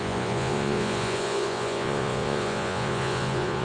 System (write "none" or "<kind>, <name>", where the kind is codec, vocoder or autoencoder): vocoder, Vocos